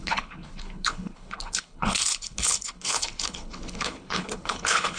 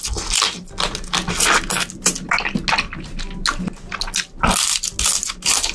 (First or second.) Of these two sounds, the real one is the second